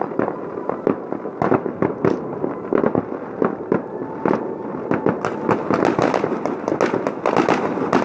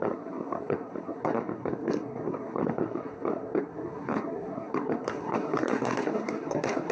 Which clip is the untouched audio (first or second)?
first